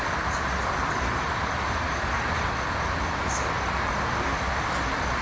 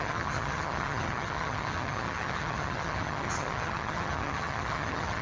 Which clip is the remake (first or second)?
second